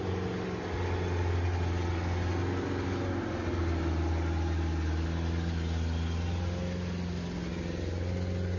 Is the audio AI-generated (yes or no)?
no